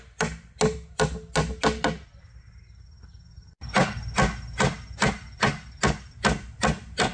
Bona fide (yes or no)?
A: yes